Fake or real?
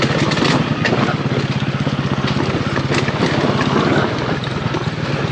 real